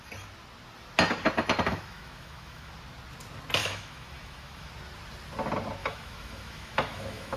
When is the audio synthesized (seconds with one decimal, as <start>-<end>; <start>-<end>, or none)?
1.7-2.7; 3.6-4.7; 5.8-7.4